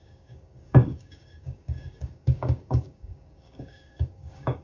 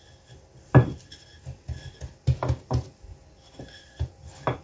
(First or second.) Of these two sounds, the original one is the second